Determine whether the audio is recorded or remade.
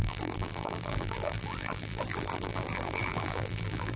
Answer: remade